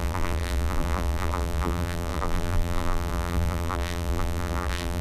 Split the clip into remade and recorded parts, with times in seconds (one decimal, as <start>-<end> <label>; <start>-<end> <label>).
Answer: 0.0-5.0 remade